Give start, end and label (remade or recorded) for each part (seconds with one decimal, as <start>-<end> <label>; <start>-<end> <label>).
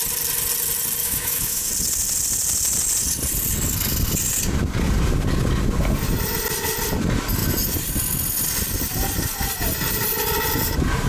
0.0-1.0 recorded; 1.0-1.7 remade; 1.7-11.1 recorded